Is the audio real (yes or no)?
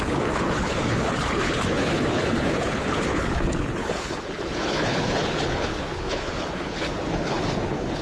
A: no